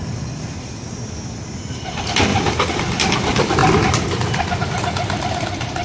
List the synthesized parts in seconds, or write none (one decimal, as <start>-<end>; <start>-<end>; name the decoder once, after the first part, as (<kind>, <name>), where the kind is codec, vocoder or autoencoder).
none